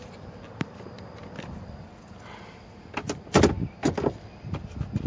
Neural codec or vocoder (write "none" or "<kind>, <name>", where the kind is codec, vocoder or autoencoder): none